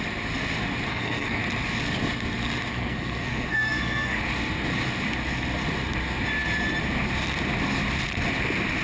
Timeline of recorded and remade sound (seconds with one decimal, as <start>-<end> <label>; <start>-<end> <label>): 0.0-0.9 recorded; 0.9-1.4 remade; 1.4-2.7 recorded; 2.7-4.2 remade; 4.2-8.8 recorded